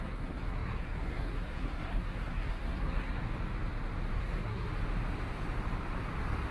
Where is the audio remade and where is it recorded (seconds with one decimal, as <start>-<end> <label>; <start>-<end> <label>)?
0.0-3.2 remade; 3.2-4.2 recorded; 4.2-4.7 remade; 4.7-6.5 recorded